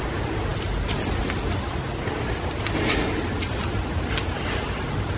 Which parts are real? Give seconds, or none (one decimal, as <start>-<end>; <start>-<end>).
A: 0.0-5.2